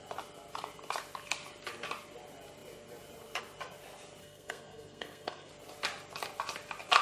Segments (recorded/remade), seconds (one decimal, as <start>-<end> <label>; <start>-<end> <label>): 0.0-4.2 recorded; 4.2-5.5 remade; 5.5-7.0 recorded